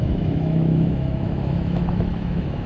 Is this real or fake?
fake